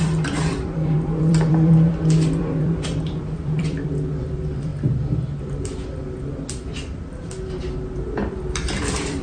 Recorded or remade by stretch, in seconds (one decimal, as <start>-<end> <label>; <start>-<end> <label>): 0.0-4.7 remade; 4.7-8.5 recorded; 8.5-9.2 remade